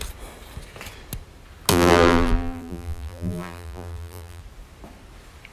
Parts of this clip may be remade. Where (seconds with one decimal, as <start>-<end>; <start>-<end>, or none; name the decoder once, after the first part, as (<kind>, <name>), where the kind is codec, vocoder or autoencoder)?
1.7-4.4 (vocoder, BigVGAN v2)